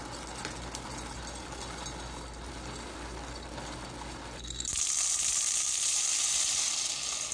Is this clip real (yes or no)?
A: yes